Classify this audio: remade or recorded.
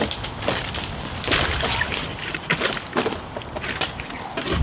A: remade